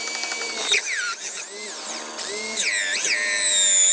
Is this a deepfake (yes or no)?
no